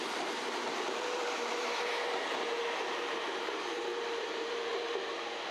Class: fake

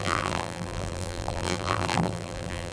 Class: fake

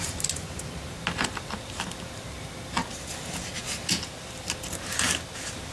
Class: real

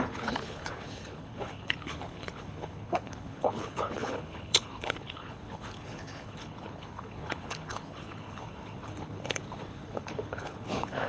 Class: fake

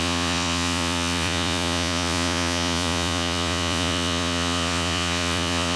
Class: fake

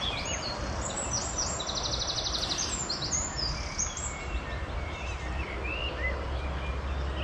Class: real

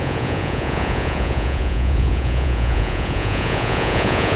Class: fake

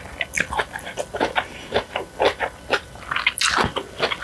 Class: real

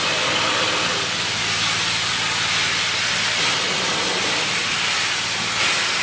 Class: real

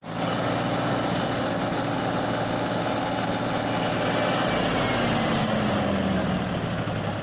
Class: real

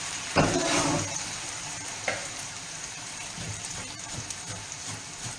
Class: fake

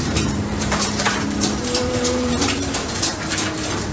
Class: fake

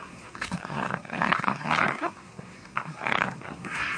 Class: fake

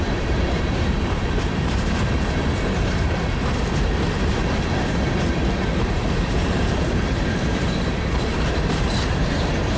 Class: fake